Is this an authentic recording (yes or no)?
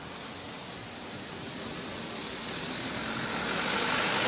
yes